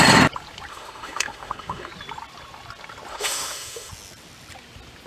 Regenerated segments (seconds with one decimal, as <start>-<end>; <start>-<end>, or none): 0.7-1.9; 3.1-3.9